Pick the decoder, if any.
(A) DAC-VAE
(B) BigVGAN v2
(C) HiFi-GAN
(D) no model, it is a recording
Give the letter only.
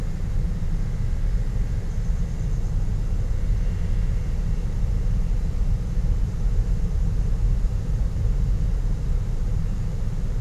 B